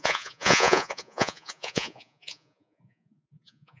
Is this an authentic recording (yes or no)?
no